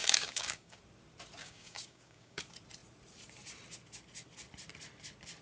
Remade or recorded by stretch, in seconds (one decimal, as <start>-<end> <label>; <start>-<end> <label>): 0.0-0.8 remade; 0.8-1.4 recorded; 1.4-2.4 remade; 2.4-5.4 recorded